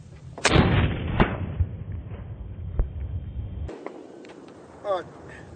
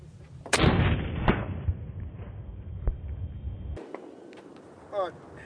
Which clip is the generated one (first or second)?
first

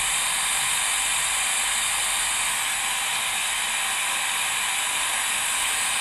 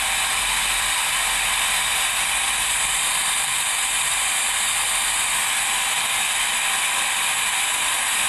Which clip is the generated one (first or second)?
second